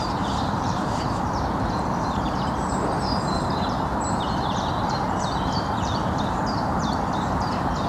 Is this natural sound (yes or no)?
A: no